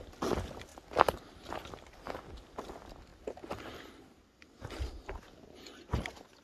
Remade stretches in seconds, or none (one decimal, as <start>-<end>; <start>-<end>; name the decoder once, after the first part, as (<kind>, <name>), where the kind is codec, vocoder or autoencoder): none